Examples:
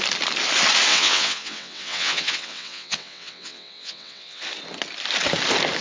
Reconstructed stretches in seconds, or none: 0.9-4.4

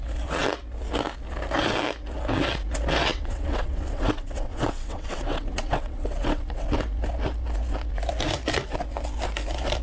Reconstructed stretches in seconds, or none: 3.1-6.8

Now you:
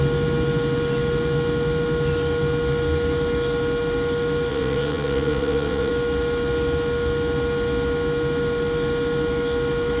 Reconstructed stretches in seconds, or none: 4.5-5.9

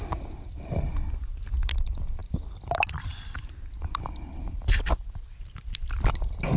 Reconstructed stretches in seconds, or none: none

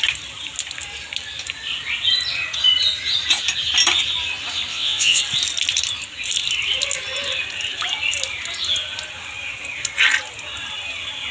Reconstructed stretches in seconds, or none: 4.7-5.2

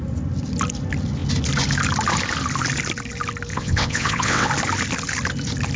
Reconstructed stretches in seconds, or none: 3.5-4.5